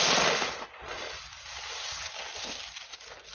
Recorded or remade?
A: recorded